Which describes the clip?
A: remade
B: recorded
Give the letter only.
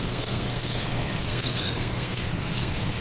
A